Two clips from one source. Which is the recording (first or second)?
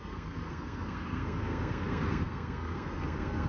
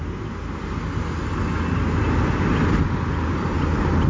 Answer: second